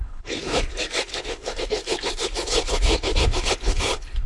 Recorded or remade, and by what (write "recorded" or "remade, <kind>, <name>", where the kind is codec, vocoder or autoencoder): remade, codec, HILCodec